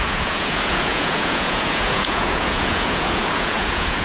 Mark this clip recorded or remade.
remade